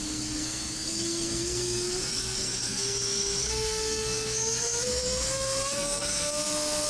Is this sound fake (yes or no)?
yes